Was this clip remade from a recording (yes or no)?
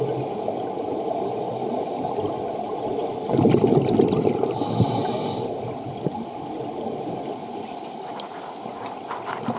no